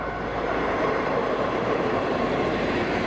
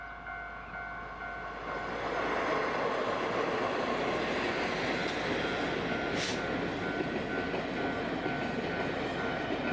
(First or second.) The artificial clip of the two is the first